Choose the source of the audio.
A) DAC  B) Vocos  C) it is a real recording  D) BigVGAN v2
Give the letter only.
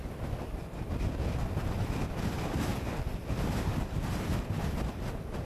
C